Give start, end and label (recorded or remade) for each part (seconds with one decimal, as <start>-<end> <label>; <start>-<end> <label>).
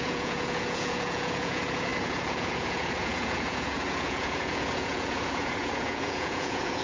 0.0-6.8 remade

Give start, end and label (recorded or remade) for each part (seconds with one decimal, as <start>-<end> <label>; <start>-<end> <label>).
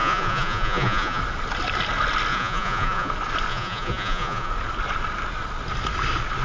0.0-1.2 remade; 1.2-2.3 recorded; 2.3-3.1 remade; 3.1-3.5 recorded; 3.5-4.5 remade; 4.5-6.4 recorded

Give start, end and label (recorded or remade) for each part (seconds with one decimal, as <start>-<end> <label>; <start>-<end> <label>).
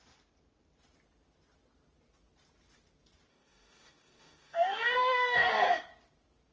0.0-3.3 recorded; 3.3-5.5 remade; 5.5-6.5 recorded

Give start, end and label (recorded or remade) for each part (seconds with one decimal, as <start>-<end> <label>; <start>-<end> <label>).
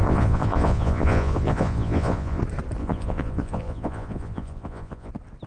0.0-2.4 remade; 2.4-2.8 recorded; 2.8-5.1 remade; 5.1-5.5 recorded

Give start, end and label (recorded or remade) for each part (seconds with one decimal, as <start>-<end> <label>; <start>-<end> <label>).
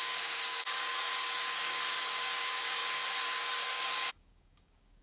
0.0-5.0 remade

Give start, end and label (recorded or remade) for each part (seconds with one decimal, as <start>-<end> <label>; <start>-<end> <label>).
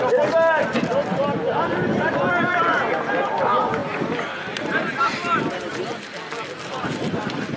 0.0-3.8 recorded; 3.8-5.6 remade; 5.6-7.6 recorded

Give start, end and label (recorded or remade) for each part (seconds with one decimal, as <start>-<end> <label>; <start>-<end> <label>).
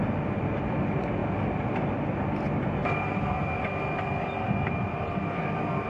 0.0-5.9 recorded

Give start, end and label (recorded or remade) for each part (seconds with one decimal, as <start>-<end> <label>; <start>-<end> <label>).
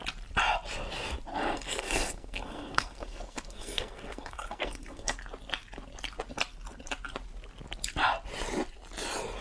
0.0-1.3 recorded; 1.3-5.2 remade; 5.2-9.4 recorded